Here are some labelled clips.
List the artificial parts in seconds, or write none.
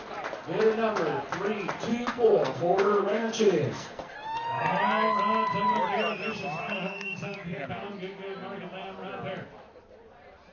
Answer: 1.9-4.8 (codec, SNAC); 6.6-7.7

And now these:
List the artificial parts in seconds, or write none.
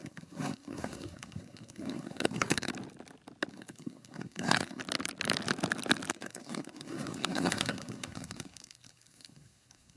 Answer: 0.0-2.7 (codec, SNAC); 3.5-4.8; 6.1-10.0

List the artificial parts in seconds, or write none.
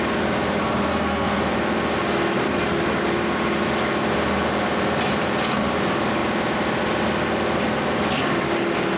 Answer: 0.9-1.4 (codec, SNAC)